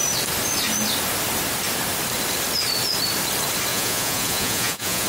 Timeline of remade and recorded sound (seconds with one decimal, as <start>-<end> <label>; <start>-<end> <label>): 0.0-3.7 recorded; 3.7-5.1 remade